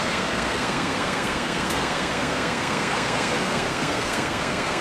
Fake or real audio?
fake